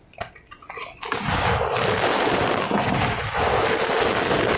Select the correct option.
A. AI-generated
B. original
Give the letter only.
B